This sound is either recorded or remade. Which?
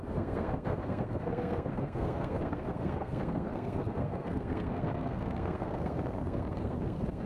remade